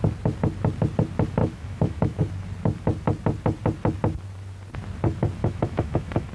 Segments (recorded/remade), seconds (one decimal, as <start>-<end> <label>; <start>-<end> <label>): 0.0-1.4 recorded; 1.4-2.2 remade; 2.2-5.4 recorded; 5.4-6.3 remade